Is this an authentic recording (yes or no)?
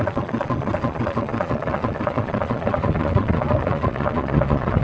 no